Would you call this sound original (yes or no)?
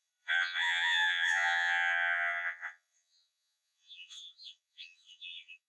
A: no